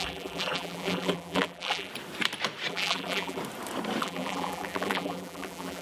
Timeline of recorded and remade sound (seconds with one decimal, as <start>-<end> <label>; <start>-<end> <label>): 0.0-1.9 remade; 1.9-2.7 recorded; 2.7-3.4 remade; 3.4-4.0 recorded; 4.0-5.8 remade